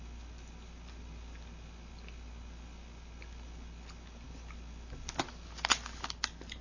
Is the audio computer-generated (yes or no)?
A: no